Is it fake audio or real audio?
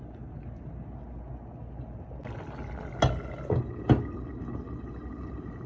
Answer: real